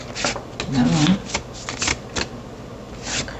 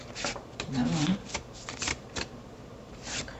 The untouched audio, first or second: first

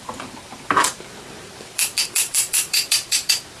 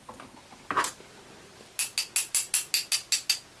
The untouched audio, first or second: second